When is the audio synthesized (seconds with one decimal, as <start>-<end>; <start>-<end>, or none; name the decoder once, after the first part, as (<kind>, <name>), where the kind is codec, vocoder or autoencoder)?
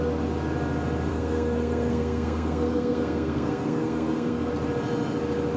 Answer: 1.1-4.5 (codec, SNAC)